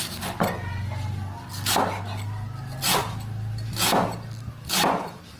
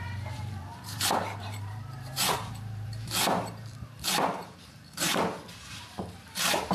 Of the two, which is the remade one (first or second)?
second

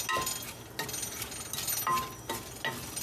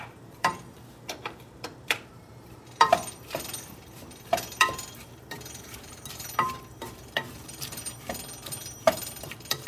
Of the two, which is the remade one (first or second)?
second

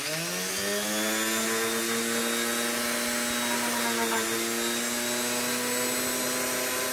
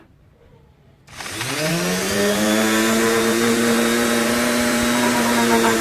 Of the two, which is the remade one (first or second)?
second